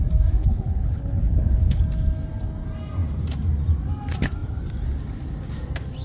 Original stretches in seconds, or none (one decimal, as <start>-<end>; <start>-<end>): 0.0-0.4; 1.8-6.0